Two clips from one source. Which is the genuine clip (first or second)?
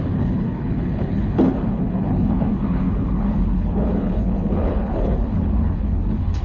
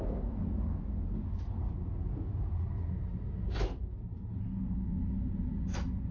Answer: second